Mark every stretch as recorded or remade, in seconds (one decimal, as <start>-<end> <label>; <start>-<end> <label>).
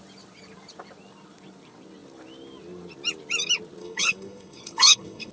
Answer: 0.0-3.8 recorded; 3.8-5.3 remade